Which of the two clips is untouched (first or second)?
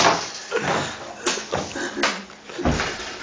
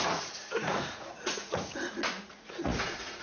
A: first